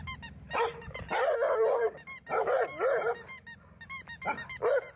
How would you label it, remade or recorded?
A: recorded